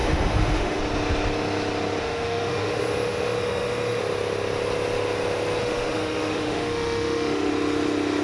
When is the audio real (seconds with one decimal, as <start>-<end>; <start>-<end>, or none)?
0.8-2.0; 4.0-5.6; 7.5-8.2